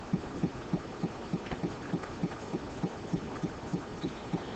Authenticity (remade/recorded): recorded